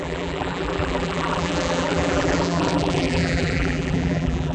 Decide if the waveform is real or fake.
fake